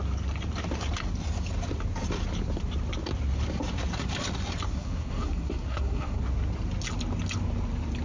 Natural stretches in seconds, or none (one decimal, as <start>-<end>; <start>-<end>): 0.0-4.7; 6.2-8.0